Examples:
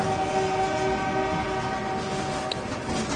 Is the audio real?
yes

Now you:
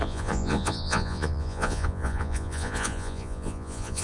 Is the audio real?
no